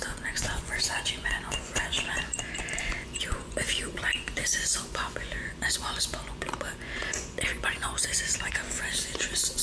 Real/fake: fake